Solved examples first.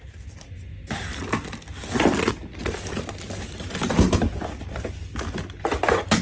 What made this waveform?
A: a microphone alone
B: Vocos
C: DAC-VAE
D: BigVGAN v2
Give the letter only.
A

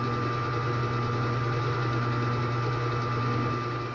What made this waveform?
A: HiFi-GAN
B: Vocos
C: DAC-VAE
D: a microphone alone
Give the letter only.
D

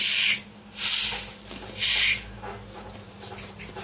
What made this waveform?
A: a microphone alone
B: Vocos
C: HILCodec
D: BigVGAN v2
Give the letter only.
A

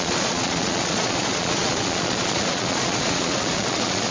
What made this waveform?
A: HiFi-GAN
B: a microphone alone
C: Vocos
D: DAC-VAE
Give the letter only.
C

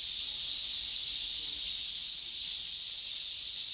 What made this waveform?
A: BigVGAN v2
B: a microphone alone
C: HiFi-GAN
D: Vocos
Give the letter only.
B